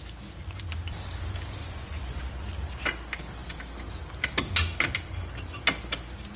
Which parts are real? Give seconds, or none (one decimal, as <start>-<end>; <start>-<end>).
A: 0.0-1.6; 2.2-6.4